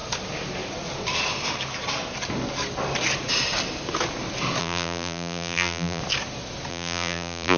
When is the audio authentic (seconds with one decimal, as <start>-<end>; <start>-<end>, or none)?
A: 0.0-4.6; 6.0-6.7

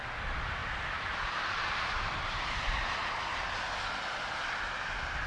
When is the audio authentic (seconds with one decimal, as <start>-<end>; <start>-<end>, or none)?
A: 0.0-0.6; 3.2-5.3

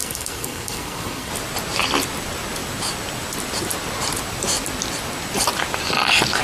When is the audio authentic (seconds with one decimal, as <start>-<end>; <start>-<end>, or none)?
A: 1.3-6.4

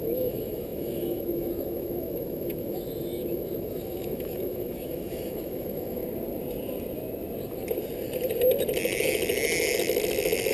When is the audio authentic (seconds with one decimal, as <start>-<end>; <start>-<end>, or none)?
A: 6.0-10.5

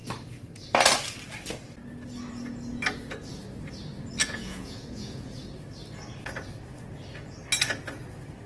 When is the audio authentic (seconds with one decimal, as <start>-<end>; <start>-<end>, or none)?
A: 0.0-4.2; 5.3-8.5

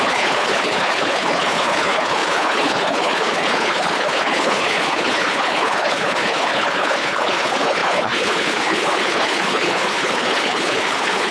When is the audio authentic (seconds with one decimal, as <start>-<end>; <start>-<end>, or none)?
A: none

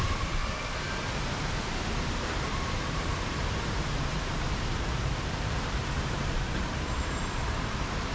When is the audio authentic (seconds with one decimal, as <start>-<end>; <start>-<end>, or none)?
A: 0.4-2.0

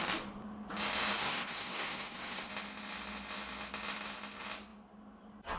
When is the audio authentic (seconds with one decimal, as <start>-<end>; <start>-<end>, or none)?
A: 0.0-1.2; 2.5-5.6